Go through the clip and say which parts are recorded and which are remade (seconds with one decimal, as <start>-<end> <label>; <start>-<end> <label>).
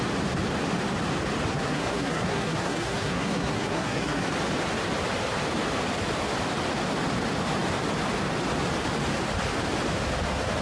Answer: 0.0-1.5 recorded; 1.5-4.2 remade; 4.2-10.6 recorded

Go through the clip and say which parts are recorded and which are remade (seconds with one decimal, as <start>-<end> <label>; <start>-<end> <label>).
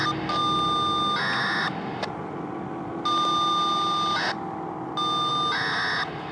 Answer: 0.0-6.3 recorded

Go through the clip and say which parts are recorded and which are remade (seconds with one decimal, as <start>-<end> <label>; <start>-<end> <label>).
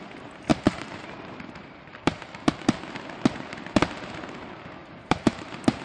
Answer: 0.0-0.5 recorded; 0.5-2.5 remade; 2.5-4.8 recorded; 4.8-5.8 remade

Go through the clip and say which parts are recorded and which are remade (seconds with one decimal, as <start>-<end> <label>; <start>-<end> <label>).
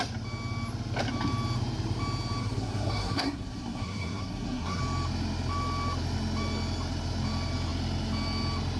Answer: 0.0-2.4 recorded; 2.4-4.8 remade; 4.8-8.8 recorded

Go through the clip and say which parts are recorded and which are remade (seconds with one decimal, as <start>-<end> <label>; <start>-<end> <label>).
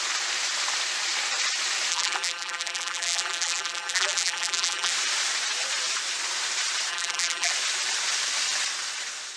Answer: 0.0-1.9 recorded; 1.9-4.9 remade; 4.9-6.9 recorded; 6.9-7.5 remade; 7.5-9.4 recorded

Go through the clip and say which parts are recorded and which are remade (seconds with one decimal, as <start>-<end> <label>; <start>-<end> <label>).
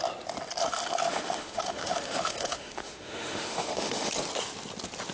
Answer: 0.0-1.0 recorded; 1.0-4.1 remade; 4.1-5.1 recorded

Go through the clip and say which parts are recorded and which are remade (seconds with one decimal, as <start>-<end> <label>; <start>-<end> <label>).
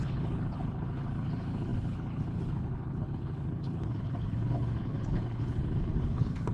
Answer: 0.0-6.5 remade